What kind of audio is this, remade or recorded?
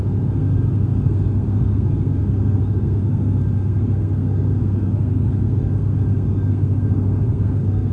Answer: remade